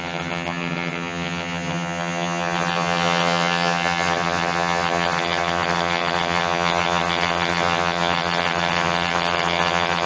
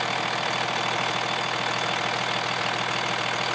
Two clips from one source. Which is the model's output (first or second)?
first